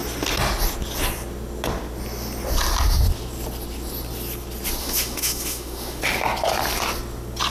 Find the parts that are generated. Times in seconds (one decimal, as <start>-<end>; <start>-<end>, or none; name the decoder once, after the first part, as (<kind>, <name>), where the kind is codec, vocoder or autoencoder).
4.8-6.0 (autoencoder, DAC-VAE)